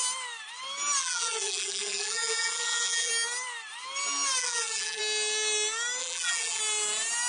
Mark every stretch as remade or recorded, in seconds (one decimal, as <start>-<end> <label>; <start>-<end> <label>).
0.0-1.0 recorded; 1.0-3.1 remade; 3.1-4.4 recorded; 4.4-5.0 remade; 5.0-6.0 recorded; 6.0-6.6 remade; 6.6-7.3 recorded